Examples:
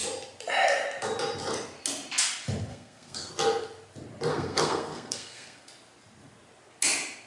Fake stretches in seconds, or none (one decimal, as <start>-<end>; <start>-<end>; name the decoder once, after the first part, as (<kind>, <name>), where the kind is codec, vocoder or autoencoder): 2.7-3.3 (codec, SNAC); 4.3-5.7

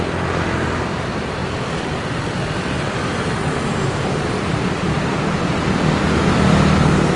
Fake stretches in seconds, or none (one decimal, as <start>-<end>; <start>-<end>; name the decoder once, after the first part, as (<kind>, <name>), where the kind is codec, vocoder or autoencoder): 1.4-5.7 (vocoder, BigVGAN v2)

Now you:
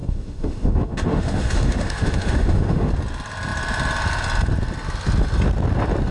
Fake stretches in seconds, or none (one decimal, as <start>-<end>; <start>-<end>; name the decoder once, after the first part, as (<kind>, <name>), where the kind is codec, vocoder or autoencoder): 0.0-2.9 (autoencoder, DAC-VAE)

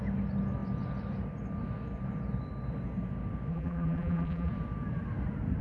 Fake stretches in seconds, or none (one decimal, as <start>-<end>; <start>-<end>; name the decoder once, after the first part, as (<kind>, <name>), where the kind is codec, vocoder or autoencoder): 3.5-4.5 (vocoder, BigVGAN v2)